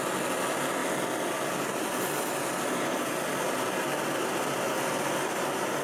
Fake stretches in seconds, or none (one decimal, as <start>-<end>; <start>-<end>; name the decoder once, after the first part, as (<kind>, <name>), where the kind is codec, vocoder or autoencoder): none